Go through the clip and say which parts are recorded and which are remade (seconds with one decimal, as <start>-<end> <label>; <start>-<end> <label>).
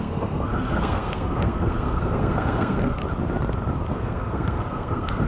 0.0-3.0 remade; 3.0-3.9 recorded; 3.9-5.3 remade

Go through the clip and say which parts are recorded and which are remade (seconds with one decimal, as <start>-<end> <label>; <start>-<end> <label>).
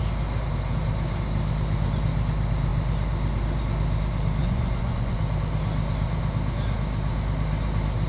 0.0-4.4 recorded; 4.4-5.2 remade; 5.2-8.1 recorded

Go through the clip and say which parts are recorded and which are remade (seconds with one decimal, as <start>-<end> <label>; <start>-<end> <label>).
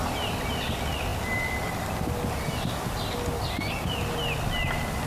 0.0-5.1 recorded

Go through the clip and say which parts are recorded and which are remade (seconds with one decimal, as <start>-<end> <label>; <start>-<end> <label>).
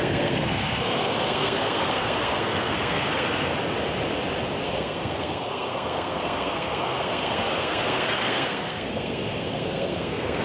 0.0-3.5 remade; 3.5-4.6 recorded; 4.6-10.4 remade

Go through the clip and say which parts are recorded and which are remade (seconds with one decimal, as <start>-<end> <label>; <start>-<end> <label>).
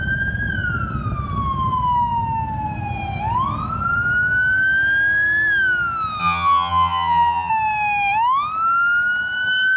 0.0-6.2 recorded; 6.2-7.5 remade; 7.5-9.8 recorded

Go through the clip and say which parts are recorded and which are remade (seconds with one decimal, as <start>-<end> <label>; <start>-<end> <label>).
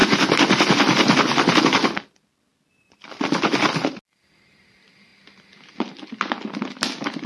0.0-1.6 remade; 1.6-7.3 recorded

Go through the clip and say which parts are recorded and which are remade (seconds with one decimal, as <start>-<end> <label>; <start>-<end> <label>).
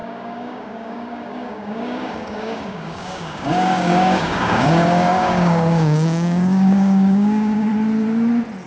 0.0-7.7 remade; 7.7-8.7 recorded